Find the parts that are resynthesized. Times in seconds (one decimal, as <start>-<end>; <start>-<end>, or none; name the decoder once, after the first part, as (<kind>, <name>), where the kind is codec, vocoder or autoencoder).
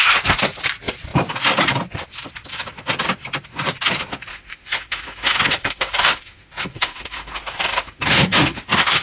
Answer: 4.3-9.0 (autoencoder, DAC-VAE)